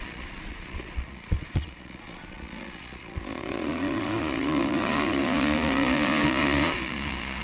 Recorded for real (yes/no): no